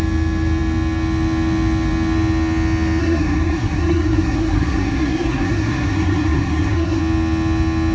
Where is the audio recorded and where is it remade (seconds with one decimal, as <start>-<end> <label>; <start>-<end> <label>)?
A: 0.0-3.0 recorded; 3.0-7.0 remade; 7.0-7.9 recorded